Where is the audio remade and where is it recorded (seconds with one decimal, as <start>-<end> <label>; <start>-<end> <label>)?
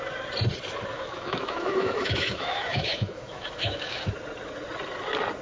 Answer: 0.0-0.9 recorded; 0.9-4.1 remade; 4.1-5.4 recorded